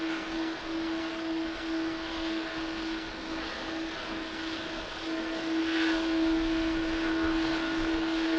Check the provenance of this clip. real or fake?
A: fake